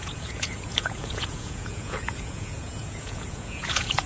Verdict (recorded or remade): remade